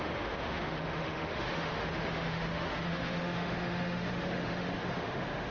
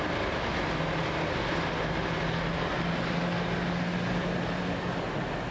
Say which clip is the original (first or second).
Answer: second